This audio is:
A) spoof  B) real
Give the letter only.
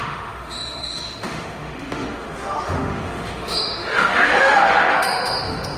A